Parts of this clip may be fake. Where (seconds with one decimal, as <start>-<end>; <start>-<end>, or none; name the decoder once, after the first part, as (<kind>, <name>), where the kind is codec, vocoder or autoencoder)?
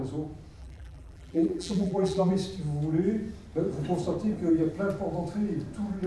0.6-2.3 (vocoder, BigVGAN v2)